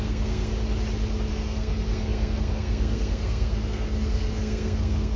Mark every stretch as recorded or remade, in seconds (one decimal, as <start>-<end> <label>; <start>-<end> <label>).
0.0-0.5 remade; 0.5-1.3 recorded; 1.3-5.2 remade

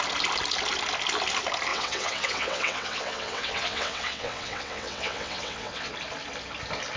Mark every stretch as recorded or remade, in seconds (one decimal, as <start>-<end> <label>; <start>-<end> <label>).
0.0-1.7 recorded; 1.7-5.9 remade; 5.9-7.0 recorded

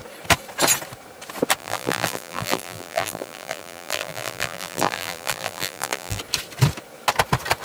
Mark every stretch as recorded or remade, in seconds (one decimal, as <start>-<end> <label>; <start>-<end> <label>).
0.0-1.6 recorded; 1.6-6.2 remade; 6.2-7.6 recorded

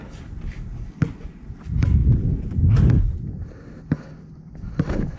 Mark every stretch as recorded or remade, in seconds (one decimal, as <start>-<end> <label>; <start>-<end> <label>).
0.0-5.2 recorded

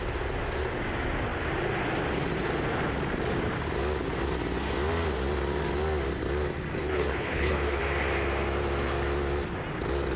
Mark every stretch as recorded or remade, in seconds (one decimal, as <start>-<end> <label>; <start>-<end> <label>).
0.0-6.8 recorded; 6.8-7.8 remade; 7.8-10.2 recorded

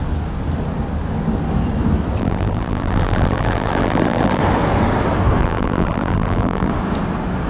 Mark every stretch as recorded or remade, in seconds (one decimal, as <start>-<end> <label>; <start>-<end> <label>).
0.0-2.2 recorded; 2.2-4.4 remade; 4.4-5.4 recorded; 5.4-6.7 remade; 6.7-7.5 recorded